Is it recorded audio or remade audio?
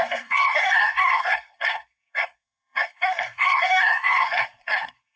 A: remade